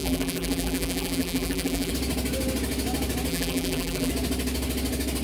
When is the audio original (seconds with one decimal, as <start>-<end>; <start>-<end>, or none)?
1.9-3.3; 4.1-5.2